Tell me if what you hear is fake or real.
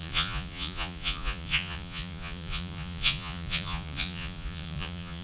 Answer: fake